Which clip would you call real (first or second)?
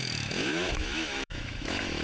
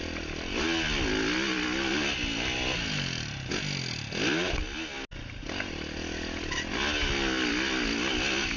second